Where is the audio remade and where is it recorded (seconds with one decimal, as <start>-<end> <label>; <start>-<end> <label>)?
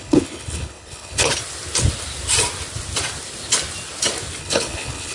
0.0-1.3 remade; 1.3-4.4 recorded; 4.4-5.1 remade